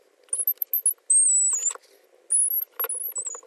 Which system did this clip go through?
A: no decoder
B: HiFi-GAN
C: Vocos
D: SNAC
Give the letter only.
A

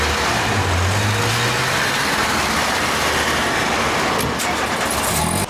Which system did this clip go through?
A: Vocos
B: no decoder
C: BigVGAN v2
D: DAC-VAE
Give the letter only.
B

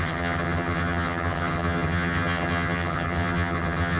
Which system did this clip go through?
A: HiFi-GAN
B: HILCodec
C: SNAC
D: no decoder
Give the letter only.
A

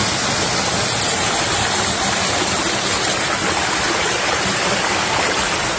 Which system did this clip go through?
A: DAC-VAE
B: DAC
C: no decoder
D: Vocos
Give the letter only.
C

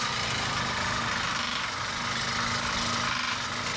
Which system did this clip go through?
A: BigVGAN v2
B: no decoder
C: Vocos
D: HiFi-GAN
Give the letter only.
B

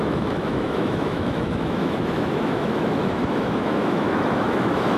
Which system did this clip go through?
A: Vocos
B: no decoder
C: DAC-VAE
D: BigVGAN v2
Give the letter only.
C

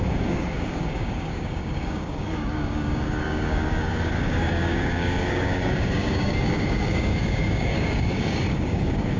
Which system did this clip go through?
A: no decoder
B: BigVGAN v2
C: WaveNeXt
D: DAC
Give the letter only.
D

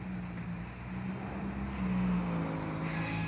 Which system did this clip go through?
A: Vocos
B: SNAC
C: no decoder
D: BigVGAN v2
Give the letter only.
C